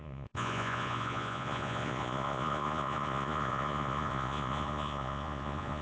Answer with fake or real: fake